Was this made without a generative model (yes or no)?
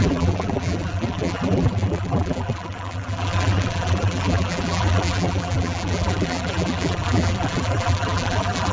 no